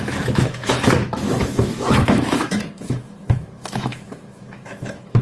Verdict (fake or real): fake